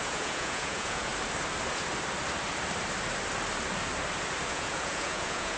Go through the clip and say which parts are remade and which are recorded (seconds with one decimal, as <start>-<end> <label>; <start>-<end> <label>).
0.0-1.1 remade; 1.1-4.5 recorded; 4.5-5.6 remade